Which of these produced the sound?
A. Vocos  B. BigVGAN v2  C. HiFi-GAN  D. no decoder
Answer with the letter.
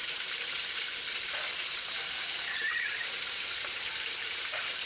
B